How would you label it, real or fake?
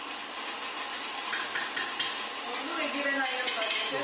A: real